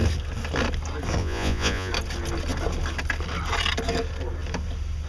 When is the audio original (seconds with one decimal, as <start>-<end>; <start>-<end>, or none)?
0.0-1.2; 1.9-5.1